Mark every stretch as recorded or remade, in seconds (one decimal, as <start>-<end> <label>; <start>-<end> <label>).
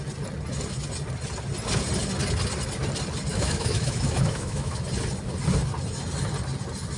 0.0-3.3 recorded; 3.3-4.8 remade; 4.8-7.0 recorded